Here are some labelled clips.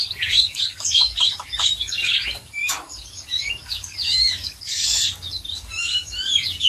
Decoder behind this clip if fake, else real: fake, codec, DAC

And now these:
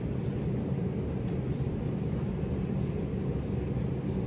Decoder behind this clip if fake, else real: real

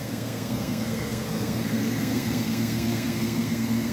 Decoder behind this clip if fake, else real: fake, codec, SNAC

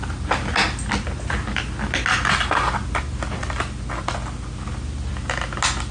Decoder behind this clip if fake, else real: real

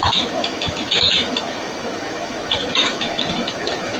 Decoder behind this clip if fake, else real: fake, autoencoder, DAC-VAE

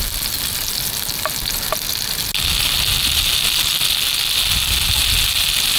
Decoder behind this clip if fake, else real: real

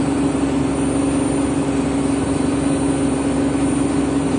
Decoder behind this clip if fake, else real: real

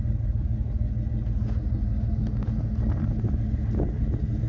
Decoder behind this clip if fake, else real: real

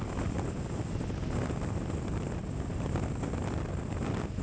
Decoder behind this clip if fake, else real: real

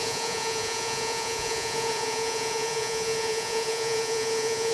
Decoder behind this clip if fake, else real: fake, vocoder, Vocos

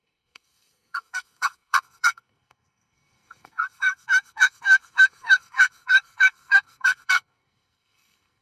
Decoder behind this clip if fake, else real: fake, codec, SNAC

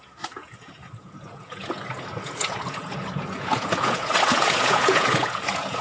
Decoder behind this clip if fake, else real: fake, vocoder, Vocos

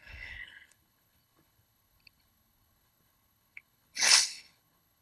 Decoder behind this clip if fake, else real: fake, codec, HILCodec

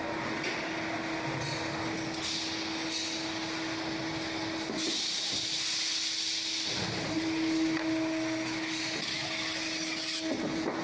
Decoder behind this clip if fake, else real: real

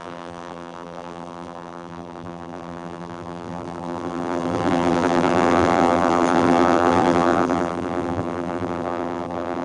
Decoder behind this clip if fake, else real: fake, vocoder, BigVGAN v2